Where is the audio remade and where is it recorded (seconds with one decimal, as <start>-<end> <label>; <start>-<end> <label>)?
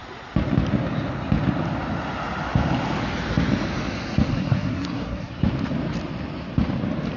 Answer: 0.0-4.3 recorded; 4.3-5.4 remade; 5.4-7.2 recorded